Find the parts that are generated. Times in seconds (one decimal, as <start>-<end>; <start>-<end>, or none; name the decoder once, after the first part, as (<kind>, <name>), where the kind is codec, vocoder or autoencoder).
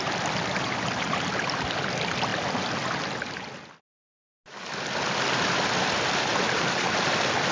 none